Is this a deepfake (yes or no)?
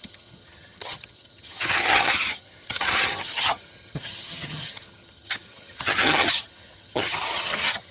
yes